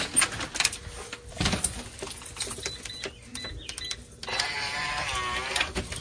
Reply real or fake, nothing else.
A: real